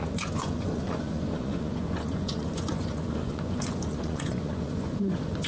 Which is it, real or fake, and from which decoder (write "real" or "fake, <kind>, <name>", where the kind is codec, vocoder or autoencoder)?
fake, vocoder, Vocos